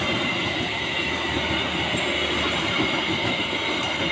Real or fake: real